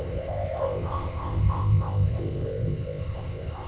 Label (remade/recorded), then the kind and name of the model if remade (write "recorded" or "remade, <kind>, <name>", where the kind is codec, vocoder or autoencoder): remade, codec, ZipCodec